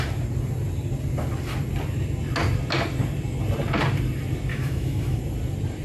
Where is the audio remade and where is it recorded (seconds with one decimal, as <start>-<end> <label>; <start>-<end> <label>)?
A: 0.0-4.5 recorded; 4.5-5.2 remade; 5.2-5.8 recorded